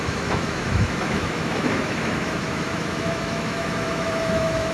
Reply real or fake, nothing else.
fake